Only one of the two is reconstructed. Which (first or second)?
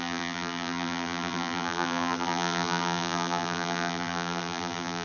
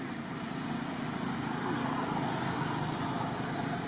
first